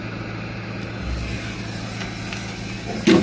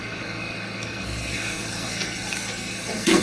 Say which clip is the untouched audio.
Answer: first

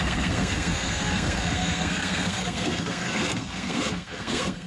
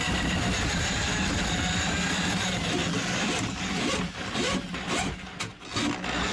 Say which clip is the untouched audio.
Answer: second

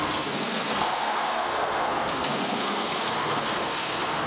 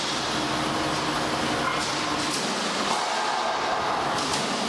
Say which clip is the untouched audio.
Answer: second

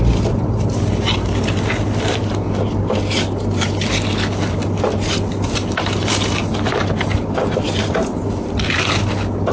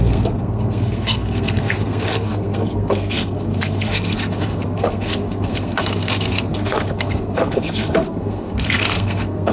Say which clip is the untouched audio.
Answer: first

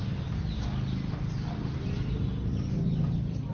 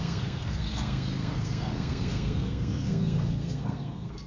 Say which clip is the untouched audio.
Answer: first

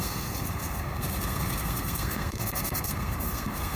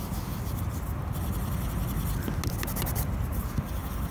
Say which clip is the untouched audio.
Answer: second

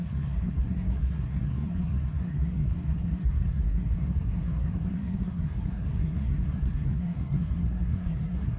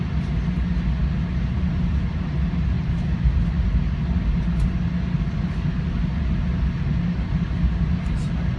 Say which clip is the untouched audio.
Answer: second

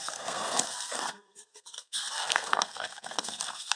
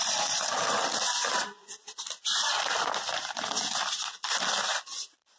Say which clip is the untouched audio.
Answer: second